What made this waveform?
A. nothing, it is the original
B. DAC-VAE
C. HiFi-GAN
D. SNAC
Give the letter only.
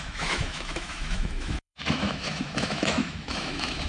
B